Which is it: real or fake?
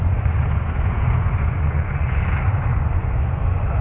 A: fake